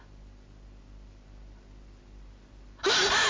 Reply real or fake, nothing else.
real